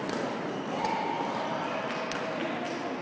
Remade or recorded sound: recorded